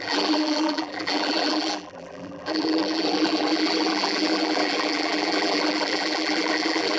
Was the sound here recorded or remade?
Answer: remade